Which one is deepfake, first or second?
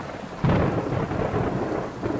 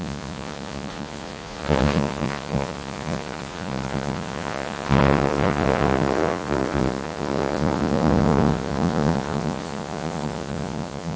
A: second